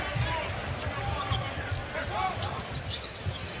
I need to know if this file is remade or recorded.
recorded